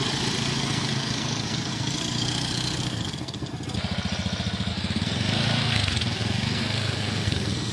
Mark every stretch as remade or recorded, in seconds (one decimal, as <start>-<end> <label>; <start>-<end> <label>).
0.0-0.5 recorded; 0.5-3.5 remade; 3.5-4.7 recorded; 4.7-7.7 remade